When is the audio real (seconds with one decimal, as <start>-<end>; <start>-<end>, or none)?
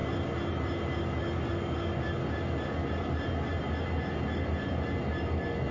0.0-5.7